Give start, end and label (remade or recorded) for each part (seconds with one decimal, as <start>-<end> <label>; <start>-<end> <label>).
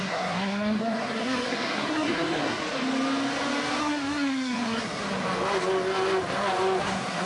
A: 0.0-2.6 remade; 2.6-3.8 recorded; 3.8-5.0 remade; 5.0-6.8 recorded; 6.8-7.3 remade